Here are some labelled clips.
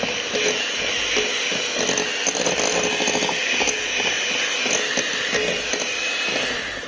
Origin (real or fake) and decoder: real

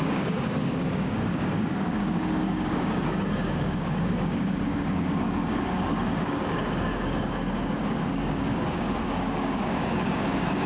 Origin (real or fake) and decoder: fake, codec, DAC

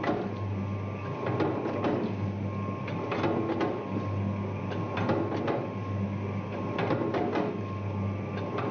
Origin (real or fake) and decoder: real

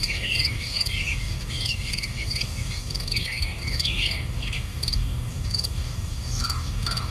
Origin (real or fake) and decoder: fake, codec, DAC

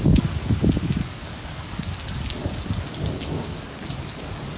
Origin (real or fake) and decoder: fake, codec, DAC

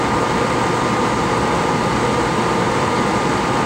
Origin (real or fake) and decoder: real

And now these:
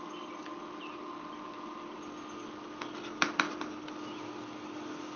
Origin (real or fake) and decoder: real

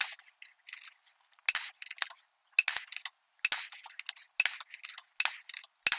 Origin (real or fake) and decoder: real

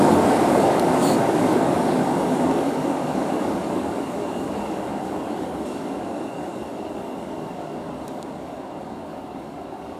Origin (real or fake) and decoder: fake, codec, DAC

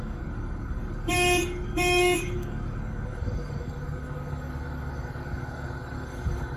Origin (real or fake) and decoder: fake, codec, DAC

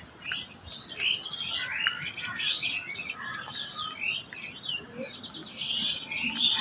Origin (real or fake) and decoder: real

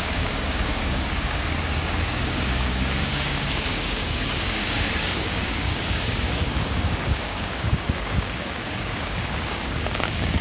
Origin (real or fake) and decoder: fake, codec, DAC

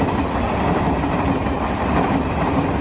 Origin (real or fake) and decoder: real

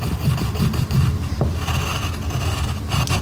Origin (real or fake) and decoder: real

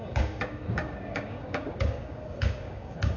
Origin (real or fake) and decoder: fake, codec, DAC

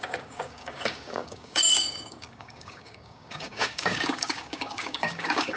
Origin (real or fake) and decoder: fake, codec, DAC